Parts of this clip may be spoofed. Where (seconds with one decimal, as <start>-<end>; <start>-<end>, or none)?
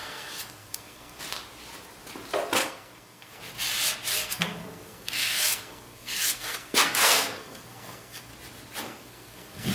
0.0-1.2; 2.6-3.4; 4.1-8.3; 8.8-9.7